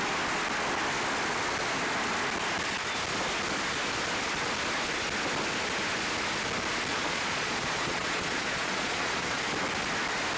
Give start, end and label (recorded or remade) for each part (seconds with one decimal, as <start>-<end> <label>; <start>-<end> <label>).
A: 0.0-6.9 recorded; 6.9-9.4 remade; 9.4-10.4 recorded